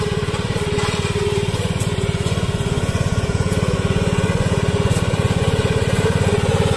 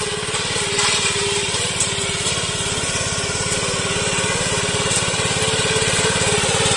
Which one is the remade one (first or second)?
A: first